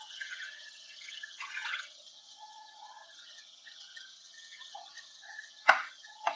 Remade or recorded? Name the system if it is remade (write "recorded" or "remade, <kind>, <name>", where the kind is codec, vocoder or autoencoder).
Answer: remade, vocoder, HiFi-GAN